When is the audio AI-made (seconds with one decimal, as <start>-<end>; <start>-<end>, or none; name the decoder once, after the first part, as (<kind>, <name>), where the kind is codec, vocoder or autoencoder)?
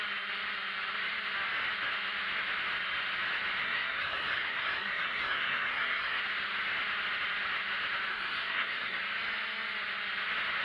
3.6-6.2 (codec, SNAC); 8.1-9.0